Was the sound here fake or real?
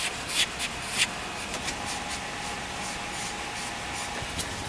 real